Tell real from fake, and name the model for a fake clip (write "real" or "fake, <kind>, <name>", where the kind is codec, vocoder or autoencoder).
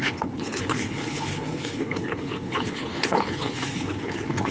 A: fake, codec, HILCodec